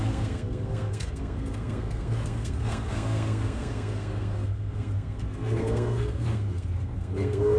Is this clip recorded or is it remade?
remade